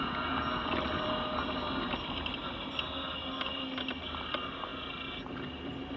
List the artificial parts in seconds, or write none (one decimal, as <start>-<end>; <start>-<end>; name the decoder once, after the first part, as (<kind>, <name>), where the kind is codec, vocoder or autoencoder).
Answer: none